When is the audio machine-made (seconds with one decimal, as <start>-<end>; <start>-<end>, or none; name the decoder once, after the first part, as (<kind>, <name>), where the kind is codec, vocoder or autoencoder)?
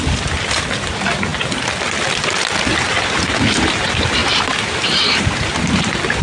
4.2-5.5 (vocoder, BigVGAN v2)